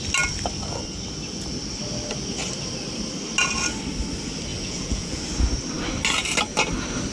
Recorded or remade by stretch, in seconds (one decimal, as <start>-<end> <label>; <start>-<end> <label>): 0.0-4.5 recorded; 4.5-5.2 remade; 5.2-7.1 recorded